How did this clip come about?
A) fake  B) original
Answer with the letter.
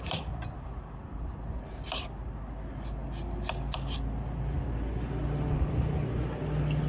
B